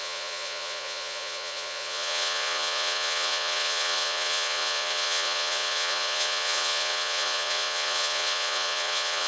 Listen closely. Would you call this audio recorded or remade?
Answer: remade